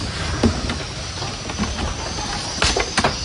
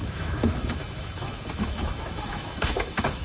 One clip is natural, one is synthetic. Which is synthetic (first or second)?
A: second